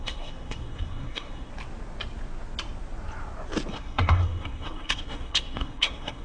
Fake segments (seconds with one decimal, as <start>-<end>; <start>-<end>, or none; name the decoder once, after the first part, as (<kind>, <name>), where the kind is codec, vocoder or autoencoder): 0.0-1.5 (codec, SNAC); 3.7-6.2